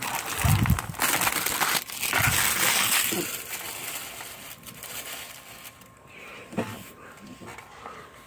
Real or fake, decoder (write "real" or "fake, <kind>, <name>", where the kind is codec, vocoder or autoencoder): real